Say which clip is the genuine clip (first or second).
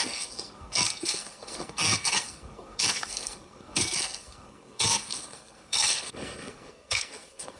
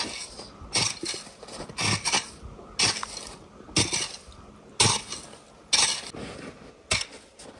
second